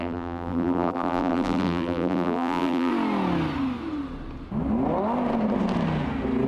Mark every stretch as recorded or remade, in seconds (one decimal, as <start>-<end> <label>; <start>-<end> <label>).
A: 0.0-2.9 remade; 2.9-6.5 recorded